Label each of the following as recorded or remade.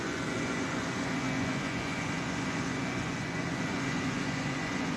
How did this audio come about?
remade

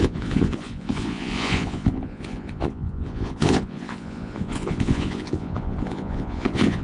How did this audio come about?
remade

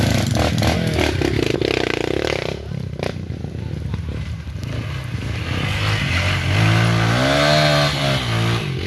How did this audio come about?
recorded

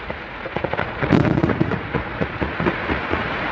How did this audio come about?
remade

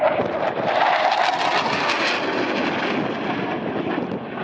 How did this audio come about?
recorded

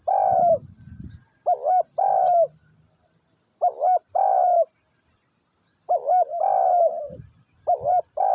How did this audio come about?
recorded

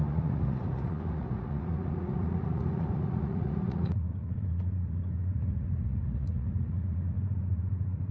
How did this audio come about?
remade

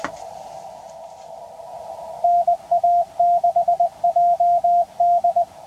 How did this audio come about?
recorded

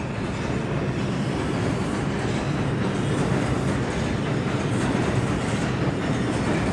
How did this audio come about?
recorded